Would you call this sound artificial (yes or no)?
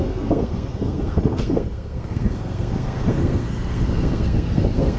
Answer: yes